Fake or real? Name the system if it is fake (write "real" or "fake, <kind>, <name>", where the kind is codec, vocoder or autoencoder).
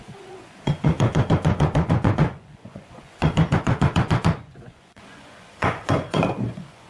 fake, vocoder, Vocos